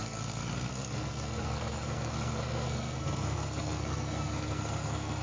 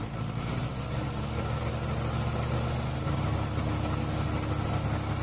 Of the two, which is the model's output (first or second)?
first